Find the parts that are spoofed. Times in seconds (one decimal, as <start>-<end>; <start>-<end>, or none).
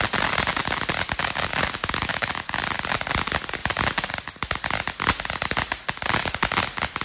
1.5-2.3